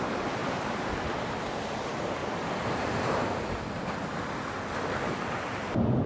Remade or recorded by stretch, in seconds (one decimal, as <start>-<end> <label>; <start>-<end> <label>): 0.0-0.4 recorded; 0.4-0.9 remade; 0.9-2.2 recorded; 2.2-3.9 remade; 3.9-6.1 recorded